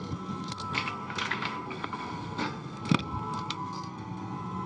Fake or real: fake